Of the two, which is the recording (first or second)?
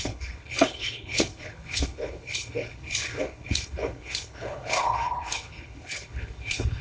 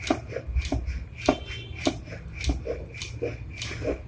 second